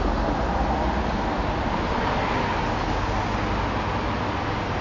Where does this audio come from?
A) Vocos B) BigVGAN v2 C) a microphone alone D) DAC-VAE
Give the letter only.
C